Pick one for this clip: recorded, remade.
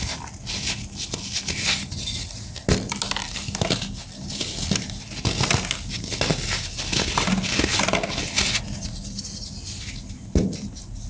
recorded